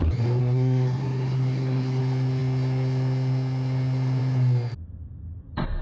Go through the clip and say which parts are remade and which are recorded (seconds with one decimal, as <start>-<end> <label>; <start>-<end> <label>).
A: 0.0-0.4 recorded; 0.4-2.0 remade; 2.0-5.8 recorded